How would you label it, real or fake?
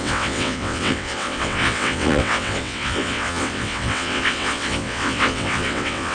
fake